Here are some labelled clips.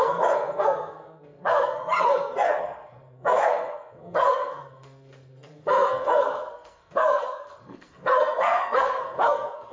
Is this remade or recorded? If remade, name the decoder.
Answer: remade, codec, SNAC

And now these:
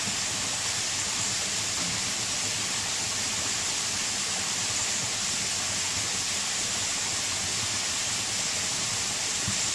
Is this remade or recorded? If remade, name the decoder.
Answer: recorded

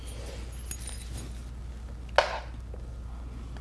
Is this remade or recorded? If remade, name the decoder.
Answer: recorded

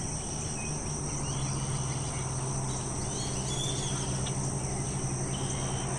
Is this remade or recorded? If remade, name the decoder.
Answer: recorded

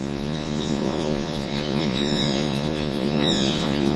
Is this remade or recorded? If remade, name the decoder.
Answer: remade, vocoder, Vocos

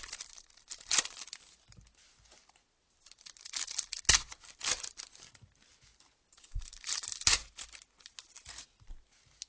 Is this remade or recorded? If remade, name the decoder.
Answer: recorded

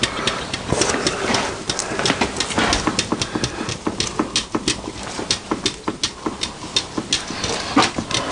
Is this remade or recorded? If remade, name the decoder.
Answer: recorded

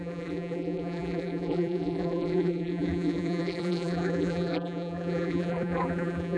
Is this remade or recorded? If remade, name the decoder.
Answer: remade, vocoder, BigVGAN v2